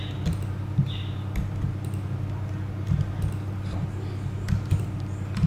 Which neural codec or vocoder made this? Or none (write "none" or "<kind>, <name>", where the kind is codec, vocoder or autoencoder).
none